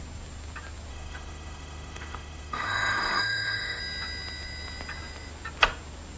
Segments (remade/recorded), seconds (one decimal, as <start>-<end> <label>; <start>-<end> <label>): 0.0-0.9 recorded; 0.9-3.8 remade; 3.8-6.2 recorded